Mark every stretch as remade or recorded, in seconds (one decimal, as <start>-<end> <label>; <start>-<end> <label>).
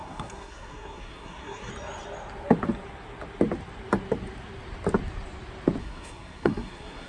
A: 0.0-1.7 remade; 1.7-5.8 recorded; 5.8-7.1 remade